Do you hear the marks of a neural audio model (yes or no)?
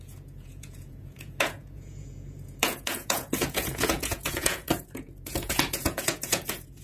yes